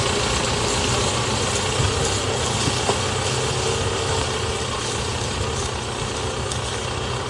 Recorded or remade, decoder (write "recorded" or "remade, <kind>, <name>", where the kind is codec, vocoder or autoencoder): recorded